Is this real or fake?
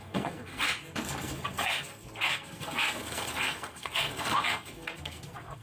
fake